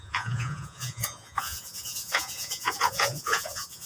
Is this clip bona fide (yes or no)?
no